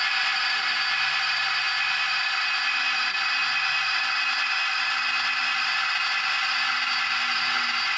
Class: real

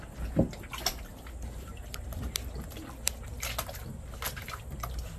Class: real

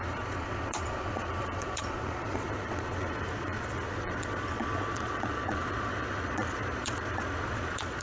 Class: fake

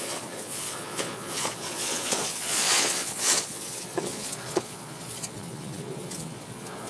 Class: fake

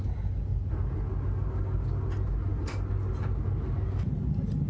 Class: real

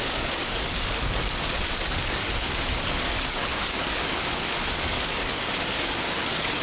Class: fake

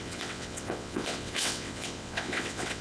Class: fake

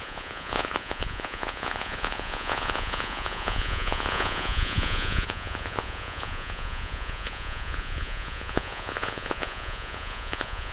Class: fake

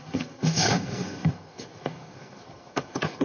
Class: fake